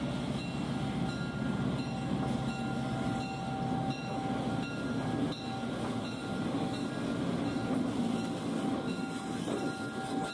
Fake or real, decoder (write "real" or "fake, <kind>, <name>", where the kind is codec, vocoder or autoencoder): real